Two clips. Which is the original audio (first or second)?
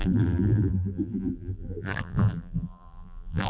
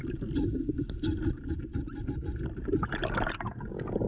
second